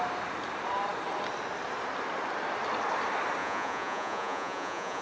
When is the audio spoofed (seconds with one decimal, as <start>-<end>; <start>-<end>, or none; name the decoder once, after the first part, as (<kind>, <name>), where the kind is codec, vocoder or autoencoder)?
3.4-5.0 (vocoder, Vocos)